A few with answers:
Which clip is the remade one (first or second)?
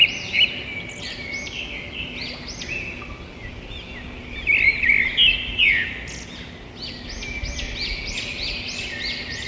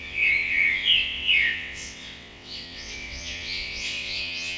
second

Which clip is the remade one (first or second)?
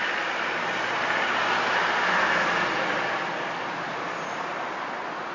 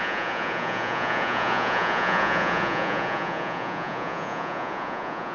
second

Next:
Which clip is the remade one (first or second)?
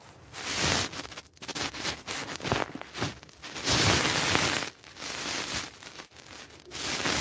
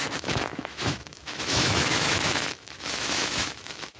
second